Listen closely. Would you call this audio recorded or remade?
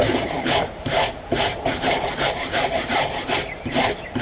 remade